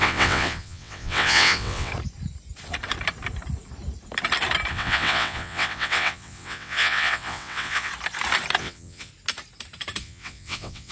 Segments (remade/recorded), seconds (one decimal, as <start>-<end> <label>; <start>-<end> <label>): 0.0-1.9 remade; 1.9-4.7 recorded; 4.7-7.9 remade; 7.9-8.6 recorded; 8.6-9.1 remade; 9.1-10.0 recorded; 10.0-10.9 remade